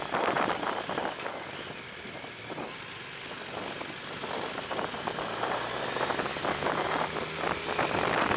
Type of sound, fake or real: real